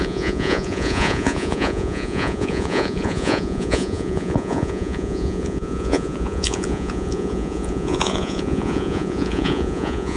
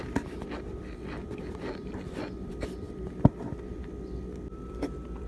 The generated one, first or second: first